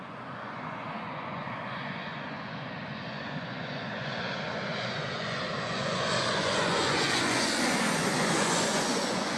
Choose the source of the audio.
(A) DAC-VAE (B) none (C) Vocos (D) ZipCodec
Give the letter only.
C